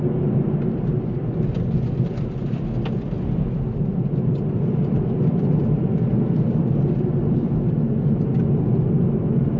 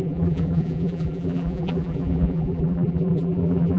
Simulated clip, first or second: second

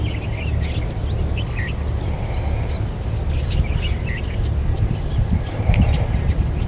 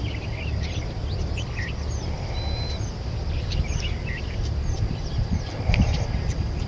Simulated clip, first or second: second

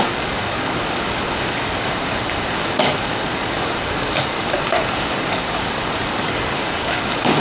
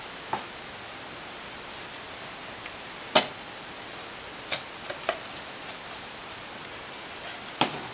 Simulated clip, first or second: first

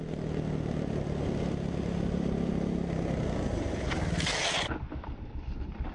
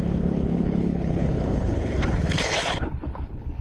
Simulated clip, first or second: second